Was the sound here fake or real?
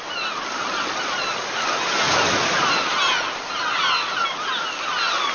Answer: real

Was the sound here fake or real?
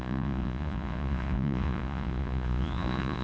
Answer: fake